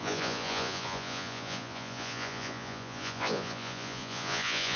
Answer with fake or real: fake